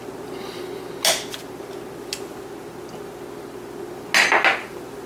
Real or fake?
real